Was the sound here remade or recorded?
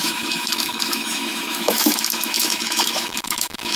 remade